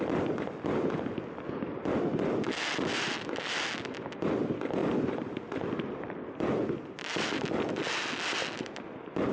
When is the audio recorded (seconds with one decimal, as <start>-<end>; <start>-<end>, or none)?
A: 0.0-9.3